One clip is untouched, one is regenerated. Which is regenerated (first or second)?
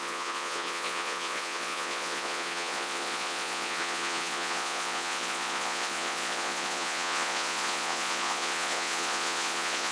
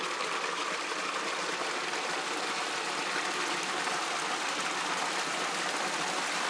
first